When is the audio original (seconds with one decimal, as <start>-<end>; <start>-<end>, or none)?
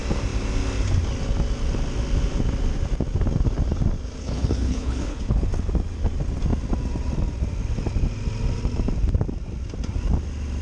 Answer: 0.0-4.2; 5.5-10.6